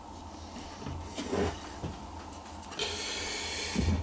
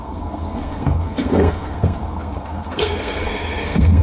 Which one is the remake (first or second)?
second